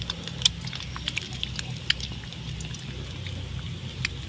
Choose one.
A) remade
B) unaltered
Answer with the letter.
B